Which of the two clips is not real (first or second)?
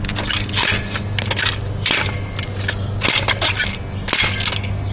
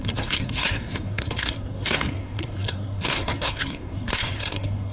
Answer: second